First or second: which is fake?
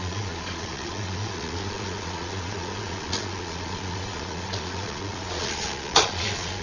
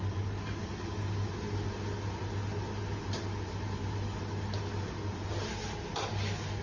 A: first